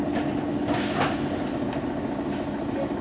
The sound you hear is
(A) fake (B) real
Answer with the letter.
B